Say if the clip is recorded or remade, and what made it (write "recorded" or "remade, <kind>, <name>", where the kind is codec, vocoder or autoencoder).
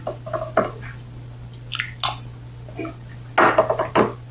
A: recorded